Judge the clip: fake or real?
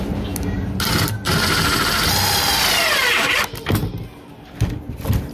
real